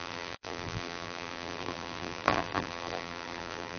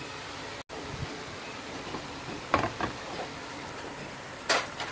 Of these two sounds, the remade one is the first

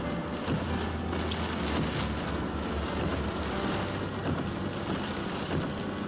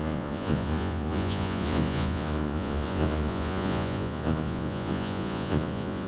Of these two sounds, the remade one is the second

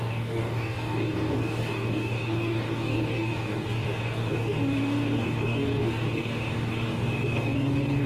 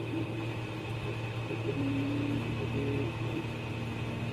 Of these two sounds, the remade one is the first